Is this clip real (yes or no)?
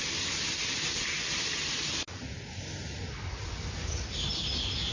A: yes